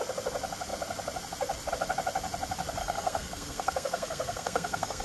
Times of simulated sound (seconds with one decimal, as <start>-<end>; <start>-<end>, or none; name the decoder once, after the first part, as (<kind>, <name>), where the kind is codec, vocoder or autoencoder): 2.8-5.0 (codec, SNAC)